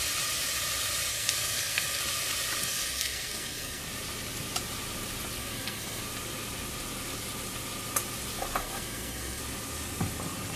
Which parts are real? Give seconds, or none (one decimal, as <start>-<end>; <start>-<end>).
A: 0.0-1.1; 2.0-2.6; 3.8-5.4; 6.0-8.6; 9.4-10.6